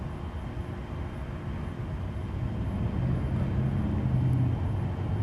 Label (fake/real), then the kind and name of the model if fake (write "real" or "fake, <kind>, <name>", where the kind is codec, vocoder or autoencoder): real